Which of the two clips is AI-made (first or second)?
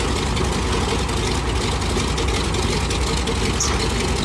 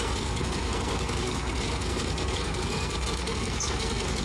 second